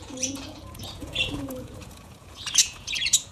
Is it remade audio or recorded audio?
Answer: remade